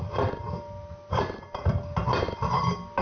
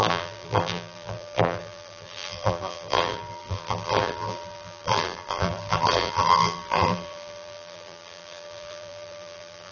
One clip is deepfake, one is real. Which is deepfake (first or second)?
second